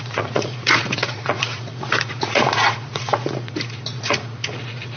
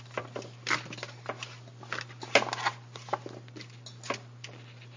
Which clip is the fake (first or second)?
first